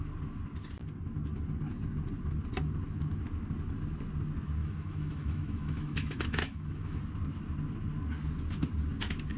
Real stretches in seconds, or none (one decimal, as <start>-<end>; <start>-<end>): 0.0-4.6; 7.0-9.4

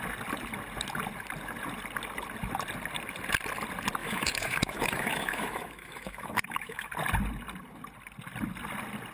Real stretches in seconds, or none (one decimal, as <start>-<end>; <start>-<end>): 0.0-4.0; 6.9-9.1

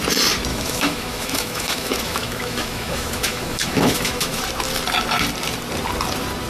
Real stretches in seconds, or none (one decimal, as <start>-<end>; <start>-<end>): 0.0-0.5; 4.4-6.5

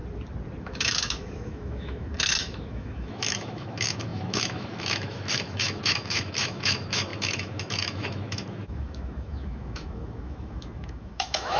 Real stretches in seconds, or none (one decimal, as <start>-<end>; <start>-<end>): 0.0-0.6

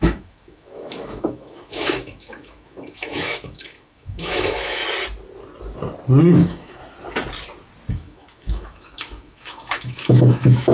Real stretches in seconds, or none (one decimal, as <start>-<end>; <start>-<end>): 4.8-6.3; 6.8-7.9

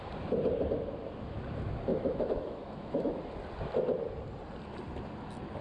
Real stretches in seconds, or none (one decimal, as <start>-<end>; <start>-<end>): 0.0-1.9; 3.2-5.6